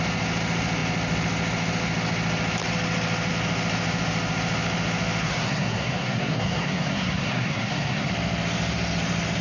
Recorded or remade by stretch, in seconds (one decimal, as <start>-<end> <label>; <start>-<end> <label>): 0.0-5.2 recorded; 5.2-8.1 remade; 8.1-9.4 recorded